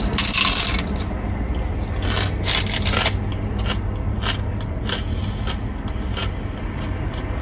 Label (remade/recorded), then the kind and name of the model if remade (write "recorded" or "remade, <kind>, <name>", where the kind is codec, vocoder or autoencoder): recorded